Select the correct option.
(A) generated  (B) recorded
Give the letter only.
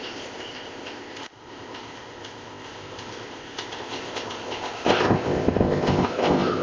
A